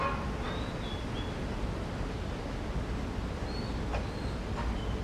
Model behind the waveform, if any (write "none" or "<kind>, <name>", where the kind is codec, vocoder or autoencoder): none